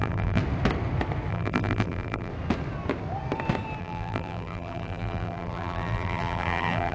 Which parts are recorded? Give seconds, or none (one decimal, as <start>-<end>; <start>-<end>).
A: 0.4-1.3; 2.3-3.8